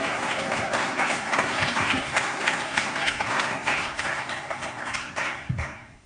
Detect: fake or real fake